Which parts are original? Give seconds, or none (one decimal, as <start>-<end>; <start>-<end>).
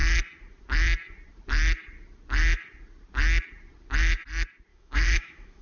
0.0-4.7